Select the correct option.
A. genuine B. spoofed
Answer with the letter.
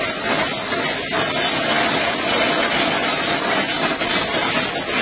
A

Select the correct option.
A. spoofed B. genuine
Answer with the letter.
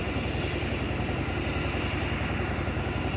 B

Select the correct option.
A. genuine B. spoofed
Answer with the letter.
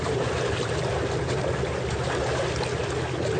A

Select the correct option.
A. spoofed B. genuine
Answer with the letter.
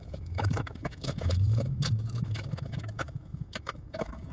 A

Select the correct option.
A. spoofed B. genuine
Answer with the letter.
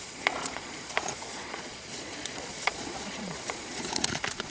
A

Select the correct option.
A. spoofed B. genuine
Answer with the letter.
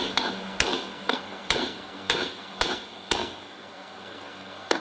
A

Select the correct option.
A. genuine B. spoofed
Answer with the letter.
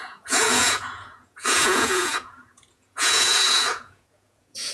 B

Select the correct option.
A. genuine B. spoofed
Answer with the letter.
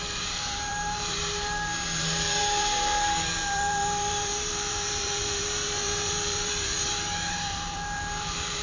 B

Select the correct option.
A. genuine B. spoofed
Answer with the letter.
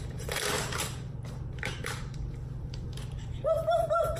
B